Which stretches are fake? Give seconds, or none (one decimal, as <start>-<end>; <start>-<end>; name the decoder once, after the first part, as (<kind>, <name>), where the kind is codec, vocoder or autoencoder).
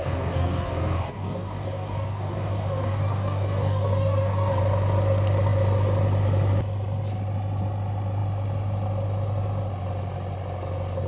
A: 0.0-4.6 (codec, DAC)